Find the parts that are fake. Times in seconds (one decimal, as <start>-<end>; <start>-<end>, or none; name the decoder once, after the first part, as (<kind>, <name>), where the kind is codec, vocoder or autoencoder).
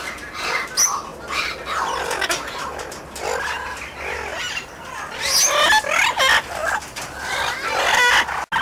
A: none